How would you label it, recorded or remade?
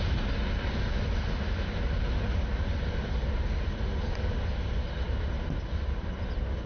recorded